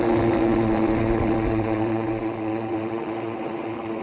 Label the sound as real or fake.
fake